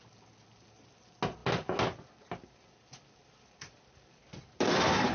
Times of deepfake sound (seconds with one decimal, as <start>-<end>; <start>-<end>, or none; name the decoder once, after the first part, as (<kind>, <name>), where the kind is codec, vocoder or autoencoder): none